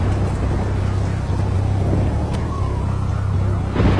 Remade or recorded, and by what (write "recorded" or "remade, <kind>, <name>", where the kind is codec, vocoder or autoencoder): recorded